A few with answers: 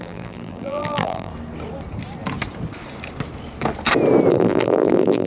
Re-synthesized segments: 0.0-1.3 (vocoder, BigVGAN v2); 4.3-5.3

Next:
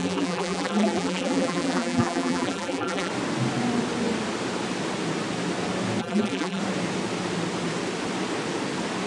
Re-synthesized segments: 0.0-3.1 (vocoder, BigVGAN v2); 6.0-6.6

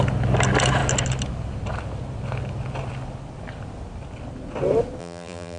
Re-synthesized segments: 5.0-5.6 (vocoder, BigVGAN v2)